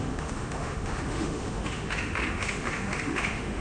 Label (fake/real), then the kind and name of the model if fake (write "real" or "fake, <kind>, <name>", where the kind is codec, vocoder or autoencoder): fake, autoencoder, DAC-VAE